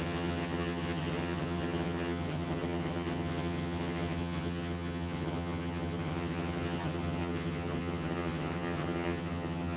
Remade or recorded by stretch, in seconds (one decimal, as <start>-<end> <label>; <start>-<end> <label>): 0.0-9.8 remade

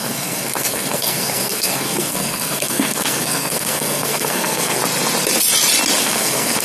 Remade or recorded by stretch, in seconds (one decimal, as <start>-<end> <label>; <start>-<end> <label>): 0.0-4.8 remade; 4.8-6.0 recorded; 6.0-6.6 remade

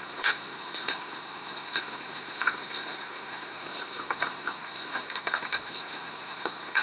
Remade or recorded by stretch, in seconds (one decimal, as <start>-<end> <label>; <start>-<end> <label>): 0.0-6.8 remade

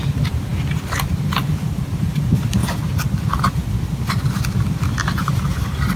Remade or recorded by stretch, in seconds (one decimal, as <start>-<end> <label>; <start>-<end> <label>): 0.0-6.0 recorded